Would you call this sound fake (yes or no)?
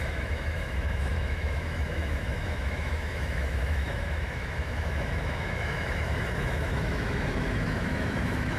yes